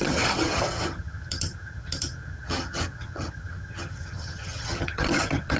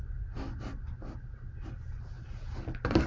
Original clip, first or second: second